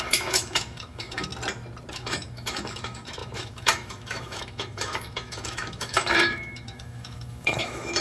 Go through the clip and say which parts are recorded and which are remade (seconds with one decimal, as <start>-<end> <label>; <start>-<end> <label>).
0.0-1.3 remade; 1.3-1.9 recorded; 1.9-8.0 remade